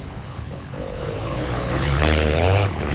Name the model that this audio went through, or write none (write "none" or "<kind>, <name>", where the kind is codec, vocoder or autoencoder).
codec, HILCodec